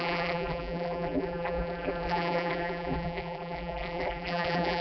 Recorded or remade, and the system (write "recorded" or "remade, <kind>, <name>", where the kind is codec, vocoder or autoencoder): remade, vocoder, BigVGAN v2